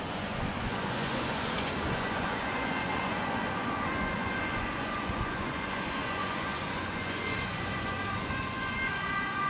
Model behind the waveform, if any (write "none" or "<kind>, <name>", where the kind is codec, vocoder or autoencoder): vocoder, Vocos